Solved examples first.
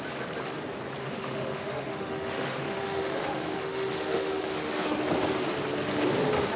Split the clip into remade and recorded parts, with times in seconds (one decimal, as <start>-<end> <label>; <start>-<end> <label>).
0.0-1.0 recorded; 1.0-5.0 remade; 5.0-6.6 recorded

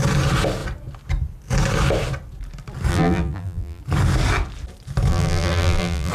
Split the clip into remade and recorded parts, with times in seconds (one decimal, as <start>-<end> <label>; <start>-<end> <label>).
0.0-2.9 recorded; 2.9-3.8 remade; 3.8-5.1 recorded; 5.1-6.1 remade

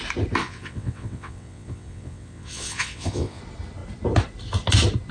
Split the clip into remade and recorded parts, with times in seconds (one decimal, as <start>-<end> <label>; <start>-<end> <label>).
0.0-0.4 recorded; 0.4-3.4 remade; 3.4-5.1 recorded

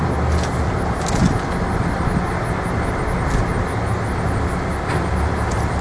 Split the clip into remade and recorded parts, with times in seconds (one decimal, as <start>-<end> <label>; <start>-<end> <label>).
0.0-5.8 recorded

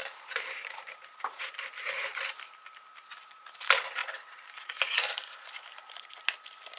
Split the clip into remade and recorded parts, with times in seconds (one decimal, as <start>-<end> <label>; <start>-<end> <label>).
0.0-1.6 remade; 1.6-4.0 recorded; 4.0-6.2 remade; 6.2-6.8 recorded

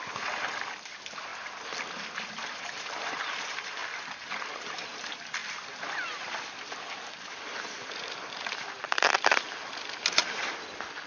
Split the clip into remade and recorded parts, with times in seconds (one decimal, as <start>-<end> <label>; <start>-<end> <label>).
0.0-1.3 recorded; 1.3-3.2 remade; 3.2-5.4 recorded; 5.4-9.4 remade; 9.4-11.1 recorded